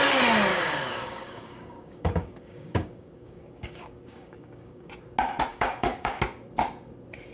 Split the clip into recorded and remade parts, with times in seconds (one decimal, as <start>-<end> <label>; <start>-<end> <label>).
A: 0.0-0.5 recorded; 0.5-4.9 remade; 4.9-5.5 recorded; 5.5-6.2 remade; 6.2-7.3 recorded